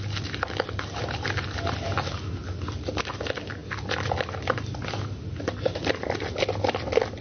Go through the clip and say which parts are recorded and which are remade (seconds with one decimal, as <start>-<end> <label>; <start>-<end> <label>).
0.0-7.2 recorded